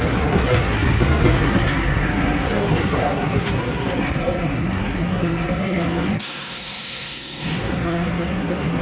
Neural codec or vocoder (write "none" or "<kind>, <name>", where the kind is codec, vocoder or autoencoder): codec, SNAC